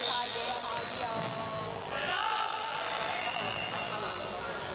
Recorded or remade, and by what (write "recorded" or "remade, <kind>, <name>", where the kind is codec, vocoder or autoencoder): remade, vocoder, BigVGAN v2